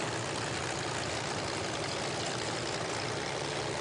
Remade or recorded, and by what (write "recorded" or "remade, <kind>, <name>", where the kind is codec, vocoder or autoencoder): recorded